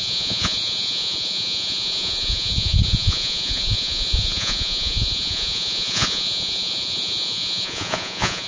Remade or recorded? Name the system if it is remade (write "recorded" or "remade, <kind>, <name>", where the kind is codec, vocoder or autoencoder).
remade, vocoder, Vocos